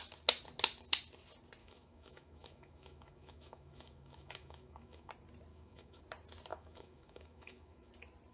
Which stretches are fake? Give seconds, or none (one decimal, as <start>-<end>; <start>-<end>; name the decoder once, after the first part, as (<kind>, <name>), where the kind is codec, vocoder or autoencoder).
1.6-5.1 (autoencoder, DAC-VAE); 5.5-6.0; 6.5-7.9

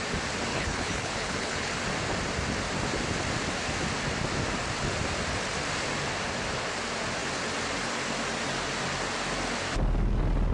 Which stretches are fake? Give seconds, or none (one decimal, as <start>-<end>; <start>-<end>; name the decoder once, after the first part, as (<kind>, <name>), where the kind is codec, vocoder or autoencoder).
0.5-1.7 (codec, HILCodec)

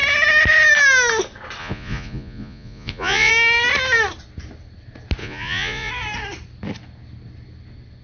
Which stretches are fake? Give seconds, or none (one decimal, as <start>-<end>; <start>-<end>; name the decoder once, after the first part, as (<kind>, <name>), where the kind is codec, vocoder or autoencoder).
1.6-3.3 (vocoder, Vocos); 5.2-5.9

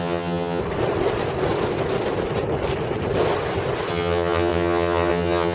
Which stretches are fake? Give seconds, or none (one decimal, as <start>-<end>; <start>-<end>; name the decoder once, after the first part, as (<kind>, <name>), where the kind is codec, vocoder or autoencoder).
0.0-0.6 (vocoder, HiFi-GAN); 3.9-5.5

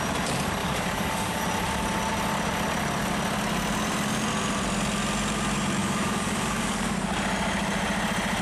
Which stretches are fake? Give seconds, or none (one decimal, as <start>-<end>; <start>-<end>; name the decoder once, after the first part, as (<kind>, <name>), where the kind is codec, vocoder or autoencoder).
0.6-1.4 (codec, DAC); 5.8-6.9

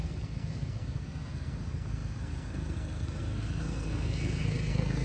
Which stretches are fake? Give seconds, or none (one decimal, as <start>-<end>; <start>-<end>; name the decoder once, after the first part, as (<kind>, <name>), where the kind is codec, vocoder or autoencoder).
0.0-5.0 (codec, SNAC)

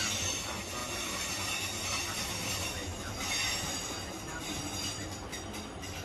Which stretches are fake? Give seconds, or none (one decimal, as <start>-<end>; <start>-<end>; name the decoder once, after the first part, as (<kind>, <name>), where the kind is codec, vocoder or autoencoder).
none